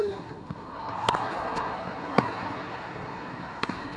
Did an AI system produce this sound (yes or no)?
yes